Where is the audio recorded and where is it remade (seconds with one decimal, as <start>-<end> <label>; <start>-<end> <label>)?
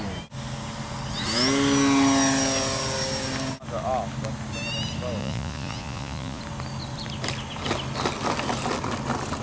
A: 0.0-5.2 recorded; 5.2-6.4 remade; 6.4-9.4 recorded